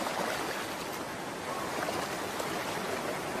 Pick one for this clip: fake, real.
real